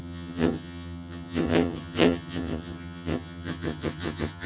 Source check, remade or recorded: remade